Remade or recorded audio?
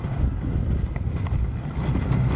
remade